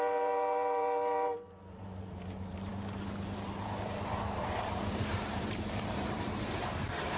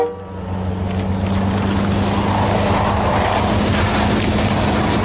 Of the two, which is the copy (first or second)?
first